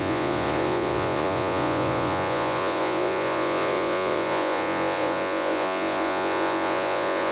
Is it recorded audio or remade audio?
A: remade